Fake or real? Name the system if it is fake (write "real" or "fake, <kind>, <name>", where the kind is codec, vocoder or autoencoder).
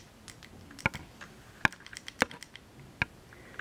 real